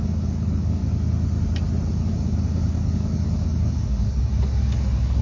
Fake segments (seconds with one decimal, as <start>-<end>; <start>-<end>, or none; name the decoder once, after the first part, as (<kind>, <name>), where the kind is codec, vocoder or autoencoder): 0.0-0.8 (codec, DAC); 1.9-5.2